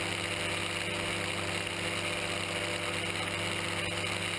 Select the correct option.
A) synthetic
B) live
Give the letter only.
B